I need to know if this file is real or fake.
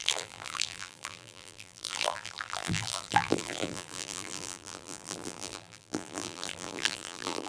fake